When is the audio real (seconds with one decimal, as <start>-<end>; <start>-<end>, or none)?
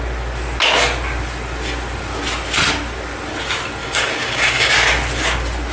0.0-3.8; 4.7-5.7